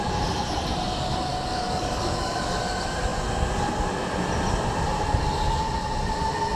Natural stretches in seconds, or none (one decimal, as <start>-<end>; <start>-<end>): 0.0-1.3; 2.6-6.6